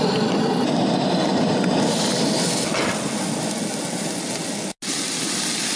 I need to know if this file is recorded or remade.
recorded